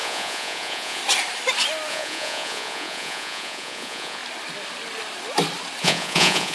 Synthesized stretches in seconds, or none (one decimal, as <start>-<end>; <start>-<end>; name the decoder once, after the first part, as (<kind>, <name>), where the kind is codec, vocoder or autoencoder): 0.0-1.0 (vocoder, Vocos); 1.9-4.2; 5.8-6.5